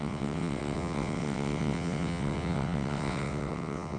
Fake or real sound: fake